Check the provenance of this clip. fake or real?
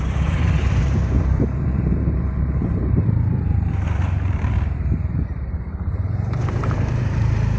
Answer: fake